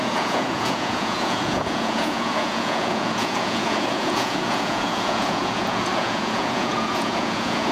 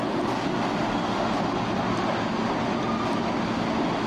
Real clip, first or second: second